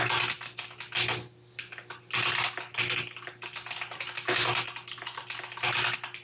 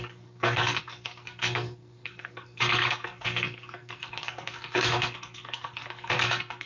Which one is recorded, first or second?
first